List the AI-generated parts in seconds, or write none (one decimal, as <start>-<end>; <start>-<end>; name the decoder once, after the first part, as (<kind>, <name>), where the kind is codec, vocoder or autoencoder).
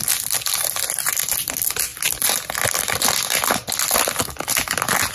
none